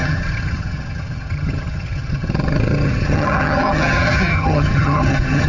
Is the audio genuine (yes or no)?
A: no